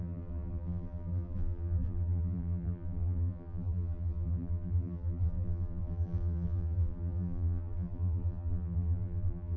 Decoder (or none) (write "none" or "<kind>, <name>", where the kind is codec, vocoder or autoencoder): vocoder, BigVGAN v2